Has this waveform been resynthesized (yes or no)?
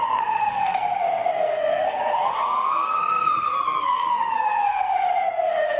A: yes